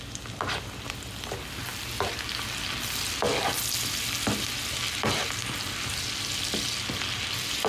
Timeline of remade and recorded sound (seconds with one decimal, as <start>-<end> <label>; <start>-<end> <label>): 0.0-7.7 recorded